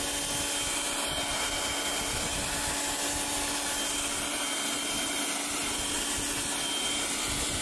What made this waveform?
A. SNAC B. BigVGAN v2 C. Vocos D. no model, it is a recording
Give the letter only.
D